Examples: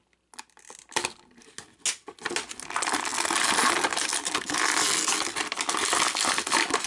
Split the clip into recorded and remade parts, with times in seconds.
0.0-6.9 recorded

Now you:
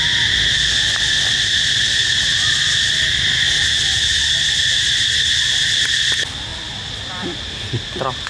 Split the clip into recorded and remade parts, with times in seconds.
0.0-8.3 recorded

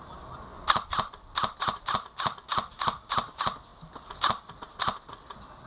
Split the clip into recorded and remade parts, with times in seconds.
0.0-5.7 recorded